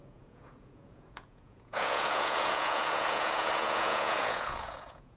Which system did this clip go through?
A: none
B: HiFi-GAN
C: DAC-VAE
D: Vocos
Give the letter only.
D